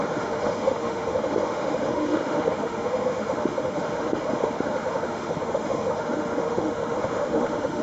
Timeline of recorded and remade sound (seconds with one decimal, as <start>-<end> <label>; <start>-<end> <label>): 0.0-7.8 remade